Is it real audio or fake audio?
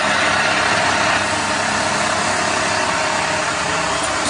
real